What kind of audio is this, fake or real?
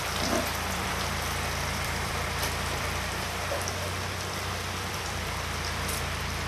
fake